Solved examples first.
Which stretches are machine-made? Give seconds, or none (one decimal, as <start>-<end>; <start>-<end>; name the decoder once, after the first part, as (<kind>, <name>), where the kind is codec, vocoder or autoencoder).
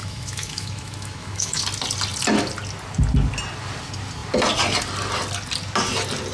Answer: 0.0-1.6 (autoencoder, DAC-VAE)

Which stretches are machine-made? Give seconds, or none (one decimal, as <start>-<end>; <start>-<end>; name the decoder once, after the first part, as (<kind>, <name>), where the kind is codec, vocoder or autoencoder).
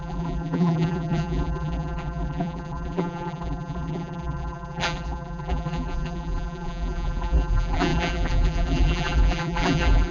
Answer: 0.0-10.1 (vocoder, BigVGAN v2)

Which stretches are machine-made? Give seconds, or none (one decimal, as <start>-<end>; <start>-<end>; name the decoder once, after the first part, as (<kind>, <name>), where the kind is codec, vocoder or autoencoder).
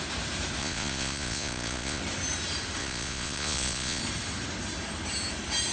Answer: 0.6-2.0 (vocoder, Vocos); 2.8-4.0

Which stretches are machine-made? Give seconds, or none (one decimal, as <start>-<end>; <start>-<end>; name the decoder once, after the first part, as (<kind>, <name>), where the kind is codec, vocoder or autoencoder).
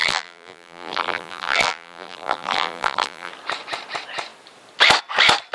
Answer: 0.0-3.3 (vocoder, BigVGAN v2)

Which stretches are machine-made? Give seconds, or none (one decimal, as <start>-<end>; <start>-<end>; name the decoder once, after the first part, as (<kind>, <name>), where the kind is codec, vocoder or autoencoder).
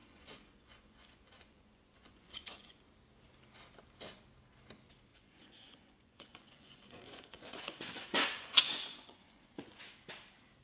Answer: 0.0-2.8 (vocoder, Vocos); 5.1-9.8